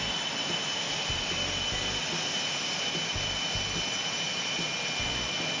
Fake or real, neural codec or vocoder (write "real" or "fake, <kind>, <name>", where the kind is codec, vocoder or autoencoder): real